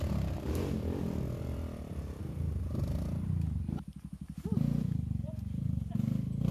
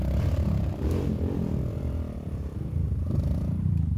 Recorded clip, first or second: first